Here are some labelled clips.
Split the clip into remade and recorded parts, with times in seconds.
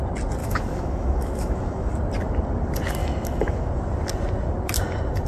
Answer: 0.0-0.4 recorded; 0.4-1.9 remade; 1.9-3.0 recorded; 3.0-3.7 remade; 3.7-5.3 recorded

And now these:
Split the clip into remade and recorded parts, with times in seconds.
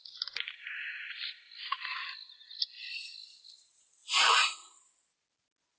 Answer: 0.0-5.8 recorded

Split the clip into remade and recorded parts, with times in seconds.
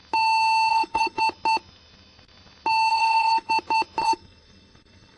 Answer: 0.0-0.7 recorded; 0.7-1.2 remade; 1.2-2.9 recorded; 2.9-3.5 remade; 3.5-4.0 recorded; 4.0-5.2 remade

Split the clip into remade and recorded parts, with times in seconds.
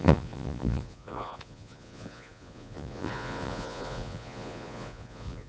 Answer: 0.0-5.5 remade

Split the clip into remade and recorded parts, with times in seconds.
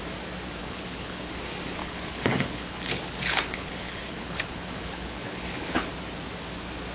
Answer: 0.0-0.6 recorded; 0.6-1.3 remade; 1.3-1.8 recorded; 1.8-5.9 remade; 5.9-6.9 recorded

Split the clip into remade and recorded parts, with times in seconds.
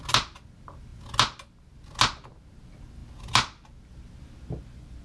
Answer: 0.0-5.0 recorded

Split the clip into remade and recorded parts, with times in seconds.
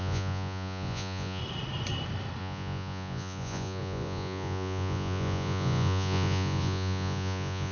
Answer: 0.0-1.4 remade; 1.4-2.4 recorded; 2.4-7.7 remade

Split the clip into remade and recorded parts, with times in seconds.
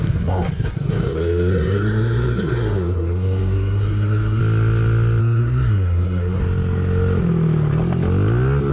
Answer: 0.0-4.4 remade; 4.4-5.2 recorded; 5.2-6.4 remade; 6.4-8.7 recorded